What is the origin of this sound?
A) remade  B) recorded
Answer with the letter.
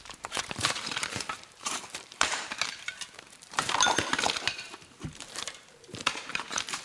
A